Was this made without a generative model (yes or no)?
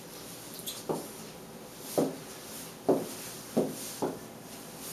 yes